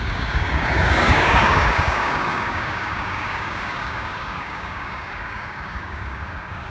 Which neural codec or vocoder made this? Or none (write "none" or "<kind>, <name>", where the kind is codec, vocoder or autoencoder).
codec, DAC